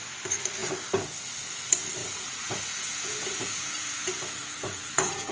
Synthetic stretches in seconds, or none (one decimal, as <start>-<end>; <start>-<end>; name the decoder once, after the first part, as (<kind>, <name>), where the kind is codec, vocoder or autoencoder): 2.0-5.3 (vocoder, Vocos)